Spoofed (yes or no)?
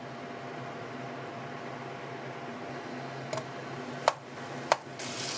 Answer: no